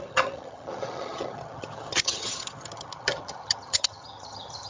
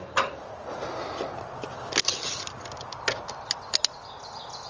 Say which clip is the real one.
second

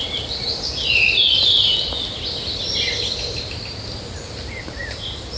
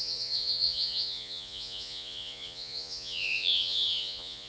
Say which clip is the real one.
first